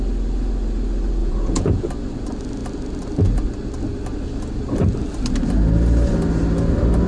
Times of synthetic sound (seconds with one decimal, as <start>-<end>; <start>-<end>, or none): 1.2-1.9